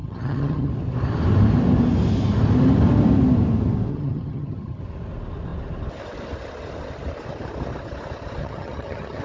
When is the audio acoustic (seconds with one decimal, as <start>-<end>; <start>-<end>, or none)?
0.7-3.9; 4.8-8.4